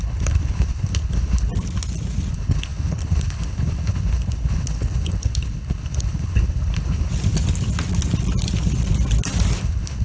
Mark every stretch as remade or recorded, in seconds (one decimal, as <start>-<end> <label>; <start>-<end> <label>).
0.0-1.5 remade; 1.5-2.3 recorded; 2.3-7.1 remade; 7.1-9.6 recorded; 9.6-10.0 remade